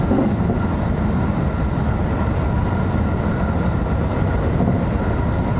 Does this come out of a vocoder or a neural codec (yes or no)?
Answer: no